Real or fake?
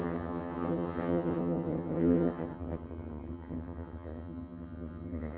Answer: fake